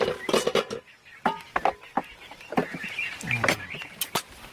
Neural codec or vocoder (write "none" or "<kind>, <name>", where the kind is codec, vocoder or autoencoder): none